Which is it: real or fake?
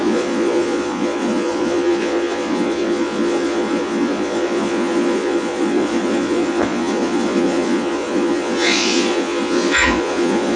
fake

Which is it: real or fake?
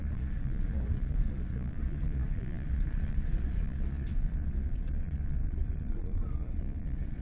fake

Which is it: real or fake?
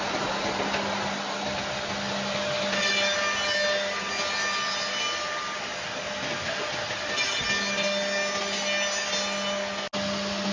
real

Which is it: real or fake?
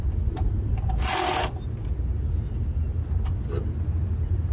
real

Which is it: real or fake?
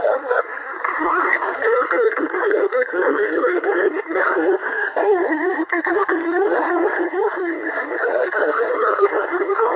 fake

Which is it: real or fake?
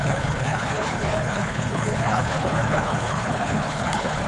fake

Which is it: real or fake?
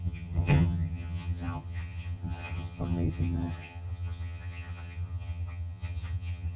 fake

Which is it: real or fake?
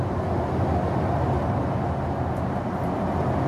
real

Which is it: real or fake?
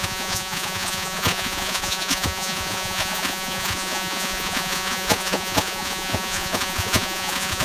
fake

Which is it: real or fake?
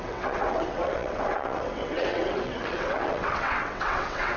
fake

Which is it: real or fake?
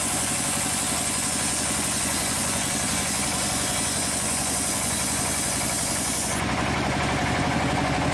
fake